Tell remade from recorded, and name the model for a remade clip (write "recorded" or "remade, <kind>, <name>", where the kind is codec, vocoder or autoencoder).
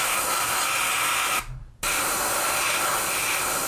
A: recorded